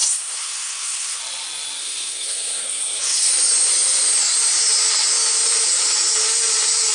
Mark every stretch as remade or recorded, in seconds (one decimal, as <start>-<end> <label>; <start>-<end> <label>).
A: 0.0-1.2 remade; 1.2-1.8 recorded; 1.8-3.3 remade; 3.3-6.9 recorded

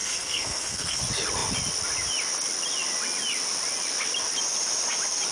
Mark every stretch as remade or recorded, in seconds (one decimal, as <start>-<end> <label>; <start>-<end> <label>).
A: 0.0-1.0 remade; 1.0-5.3 recorded

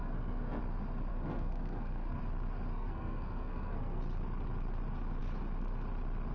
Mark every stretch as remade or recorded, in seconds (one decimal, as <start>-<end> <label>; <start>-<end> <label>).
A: 0.0-0.6 remade; 0.6-1.1 recorded; 1.1-2.2 remade; 2.2-2.7 recorded; 2.7-4.0 remade; 4.0-6.3 recorded

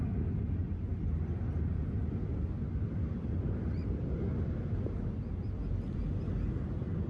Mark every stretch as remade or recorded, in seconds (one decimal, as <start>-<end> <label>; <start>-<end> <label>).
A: 0.0-7.1 recorded

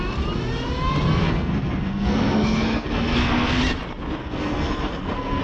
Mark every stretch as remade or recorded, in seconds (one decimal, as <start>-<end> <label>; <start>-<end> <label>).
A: 0.0-1.2 recorded; 1.2-3.6 remade; 3.6-4.2 recorded; 4.2-5.4 remade

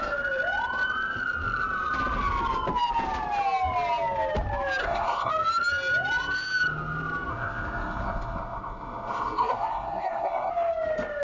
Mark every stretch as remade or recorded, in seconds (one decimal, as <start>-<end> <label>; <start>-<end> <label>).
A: 0.0-4.8 recorded; 4.8-5.3 remade; 5.3-7.3 recorded; 7.3-10.5 remade; 10.5-11.2 recorded

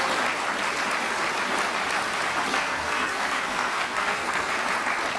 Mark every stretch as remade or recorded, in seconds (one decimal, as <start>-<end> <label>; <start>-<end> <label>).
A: 0.0-2.5 recorded; 2.5-4.6 remade; 4.6-5.2 recorded